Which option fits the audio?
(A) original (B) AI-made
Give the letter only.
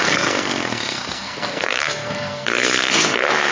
B